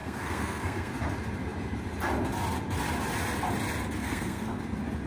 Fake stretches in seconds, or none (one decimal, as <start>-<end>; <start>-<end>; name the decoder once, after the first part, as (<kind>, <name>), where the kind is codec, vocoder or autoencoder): 0.0-0.9 (codec, SNAC); 4.0-4.6